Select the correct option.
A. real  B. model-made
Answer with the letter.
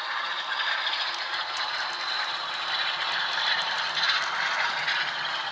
A